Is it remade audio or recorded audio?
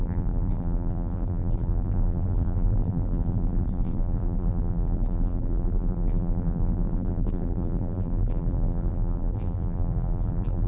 remade